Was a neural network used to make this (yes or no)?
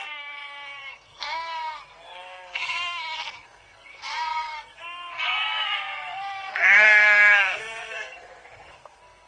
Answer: yes